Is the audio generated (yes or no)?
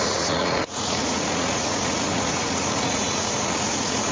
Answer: yes